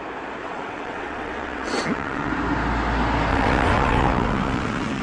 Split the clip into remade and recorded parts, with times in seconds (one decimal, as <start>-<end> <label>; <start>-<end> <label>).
0.0-0.4 recorded; 0.4-2.3 remade; 2.3-3.3 recorded; 3.3-5.0 remade